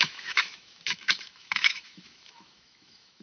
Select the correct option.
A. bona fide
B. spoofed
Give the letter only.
B